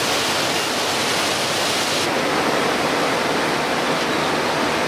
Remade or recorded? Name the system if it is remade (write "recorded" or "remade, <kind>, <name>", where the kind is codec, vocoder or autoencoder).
recorded